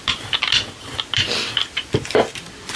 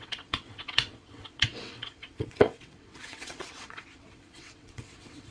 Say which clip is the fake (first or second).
second